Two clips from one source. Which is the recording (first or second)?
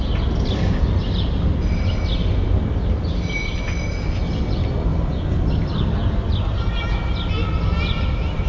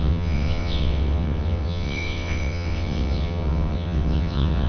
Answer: first